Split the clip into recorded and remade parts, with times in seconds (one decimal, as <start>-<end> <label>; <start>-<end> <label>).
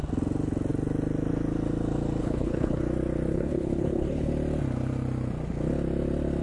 0.0-2.2 recorded; 2.2-2.8 remade; 2.8-3.3 recorded; 3.3-4.3 remade; 4.3-6.4 recorded